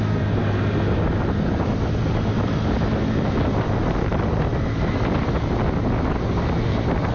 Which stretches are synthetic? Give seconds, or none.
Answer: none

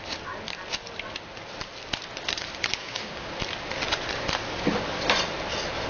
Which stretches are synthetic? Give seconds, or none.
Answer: 2.8-3.3 (codec, DAC)

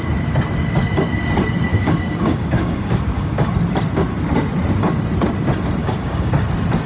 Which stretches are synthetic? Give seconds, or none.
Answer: 1.7-3.5 (codec, DAC); 5.8-6.3

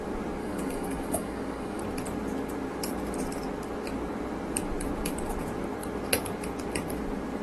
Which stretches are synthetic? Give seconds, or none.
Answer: 0.4-1.8 (codec, DAC)

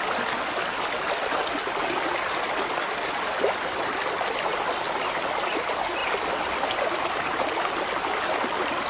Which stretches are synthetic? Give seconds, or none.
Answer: none

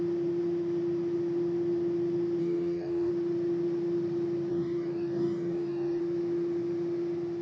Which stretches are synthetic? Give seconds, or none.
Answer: 2.4-3.1 (codec, DAC); 4.5-6.0